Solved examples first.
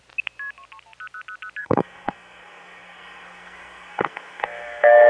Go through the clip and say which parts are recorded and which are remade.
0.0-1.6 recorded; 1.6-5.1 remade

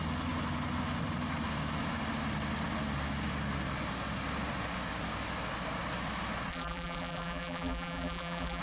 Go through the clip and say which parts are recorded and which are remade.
0.0-6.5 recorded; 6.5-8.6 remade

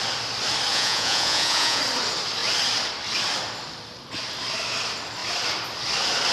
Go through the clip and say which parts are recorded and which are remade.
0.0-0.7 recorded; 0.7-1.8 remade; 1.8-6.3 recorded

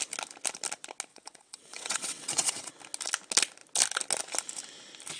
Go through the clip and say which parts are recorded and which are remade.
0.0-1.1 recorded; 1.1-2.7 remade; 2.7-5.2 recorded

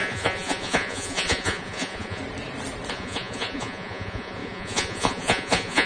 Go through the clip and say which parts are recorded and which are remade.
0.0-2.2 remade; 2.2-2.9 recorded; 2.9-5.9 remade